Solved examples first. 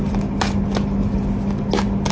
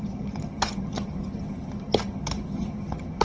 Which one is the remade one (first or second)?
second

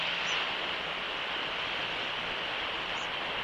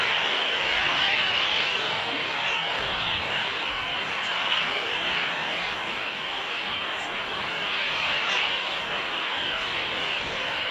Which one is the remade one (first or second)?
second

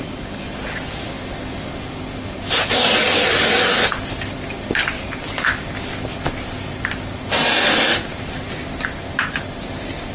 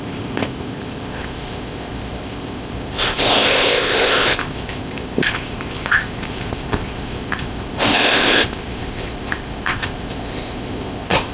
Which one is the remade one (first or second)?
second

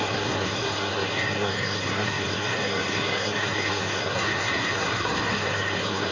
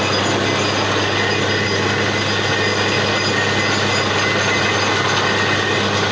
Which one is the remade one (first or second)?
first